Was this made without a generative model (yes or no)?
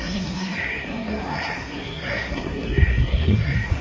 no